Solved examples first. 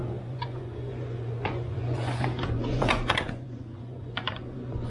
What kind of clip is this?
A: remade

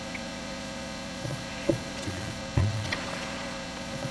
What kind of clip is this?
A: remade